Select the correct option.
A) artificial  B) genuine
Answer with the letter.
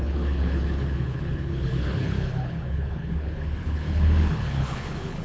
A